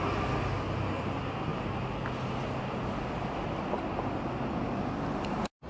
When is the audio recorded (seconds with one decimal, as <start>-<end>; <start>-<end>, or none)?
0.0-5.7